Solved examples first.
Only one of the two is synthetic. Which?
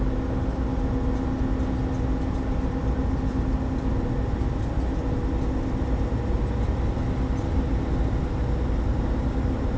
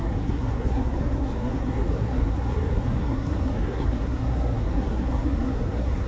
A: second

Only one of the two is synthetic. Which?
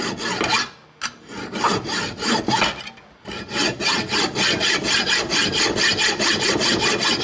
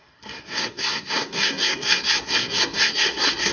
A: second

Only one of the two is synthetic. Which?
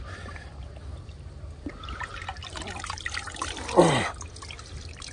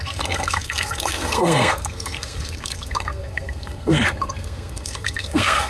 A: second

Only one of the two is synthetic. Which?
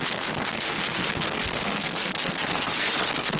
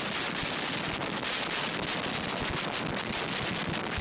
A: first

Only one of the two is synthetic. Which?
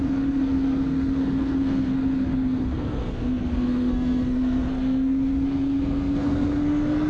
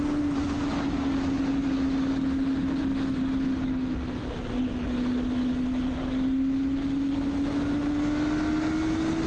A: first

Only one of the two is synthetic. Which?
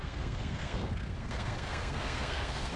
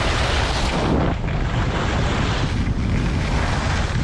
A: first